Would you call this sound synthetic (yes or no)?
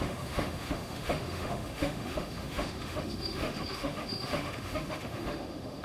yes